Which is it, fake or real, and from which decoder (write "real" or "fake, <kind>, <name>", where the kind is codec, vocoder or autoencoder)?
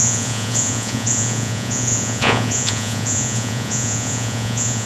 fake, vocoder, Vocos